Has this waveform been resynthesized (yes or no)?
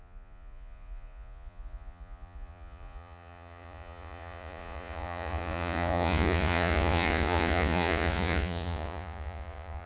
yes